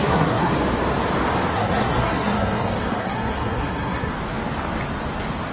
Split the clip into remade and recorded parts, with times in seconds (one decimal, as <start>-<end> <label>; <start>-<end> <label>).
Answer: 0.0-0.5 remade; 0.5-1.5 recorded; 1.5-4.1 remade; 4.1-5.5 recorded